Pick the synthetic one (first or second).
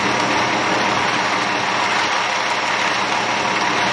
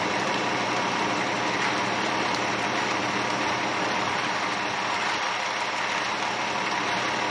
second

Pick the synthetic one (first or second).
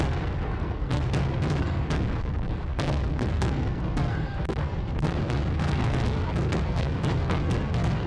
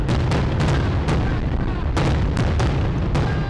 first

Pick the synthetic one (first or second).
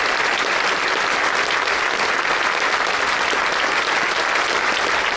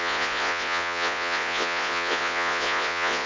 second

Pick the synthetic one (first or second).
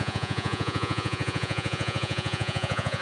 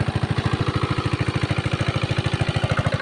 first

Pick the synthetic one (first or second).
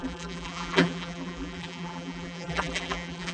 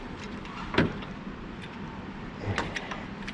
first